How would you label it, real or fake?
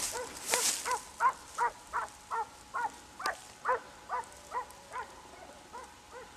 real